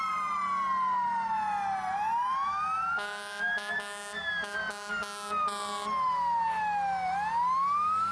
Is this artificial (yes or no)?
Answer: no